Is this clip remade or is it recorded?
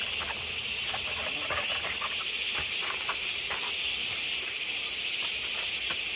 recorded